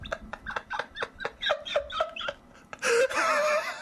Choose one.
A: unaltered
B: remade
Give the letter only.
A